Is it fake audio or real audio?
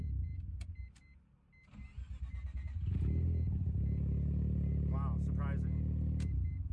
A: real